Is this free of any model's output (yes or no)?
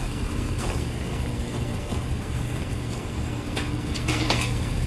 no